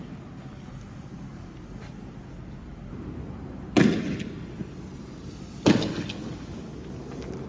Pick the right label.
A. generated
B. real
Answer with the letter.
B